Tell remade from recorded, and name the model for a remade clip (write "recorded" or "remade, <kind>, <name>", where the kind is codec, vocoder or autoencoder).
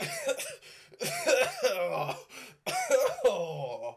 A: recorded